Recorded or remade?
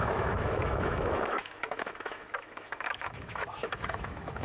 remade